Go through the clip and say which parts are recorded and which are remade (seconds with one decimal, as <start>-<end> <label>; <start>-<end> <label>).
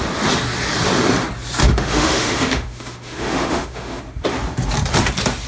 0.0-1.6 recorded; 1.6-4.0 remade; 4.0-5.5 recorded